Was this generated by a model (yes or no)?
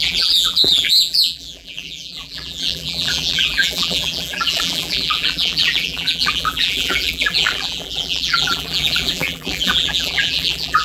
yes